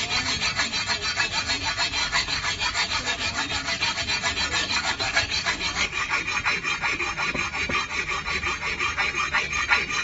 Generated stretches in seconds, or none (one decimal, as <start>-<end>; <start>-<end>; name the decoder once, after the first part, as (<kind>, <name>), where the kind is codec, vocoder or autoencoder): 2.0-4.0 (codec, DAC); 4.6-6.2